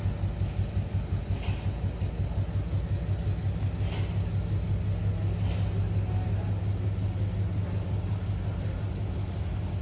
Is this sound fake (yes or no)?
no